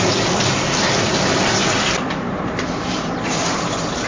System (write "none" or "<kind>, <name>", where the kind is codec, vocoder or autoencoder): vocoder, BigVGAN v2